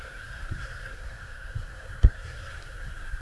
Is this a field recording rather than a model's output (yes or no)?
no